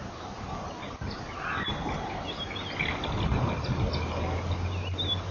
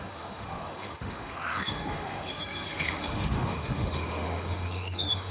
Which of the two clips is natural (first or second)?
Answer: first